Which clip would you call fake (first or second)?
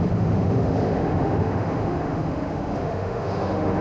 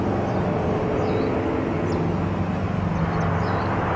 first